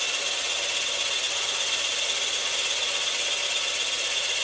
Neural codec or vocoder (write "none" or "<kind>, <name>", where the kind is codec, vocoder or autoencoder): none